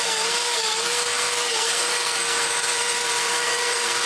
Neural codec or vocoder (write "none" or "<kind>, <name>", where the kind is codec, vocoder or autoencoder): codec, SNAC